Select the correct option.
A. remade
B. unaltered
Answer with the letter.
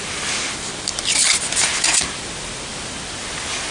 B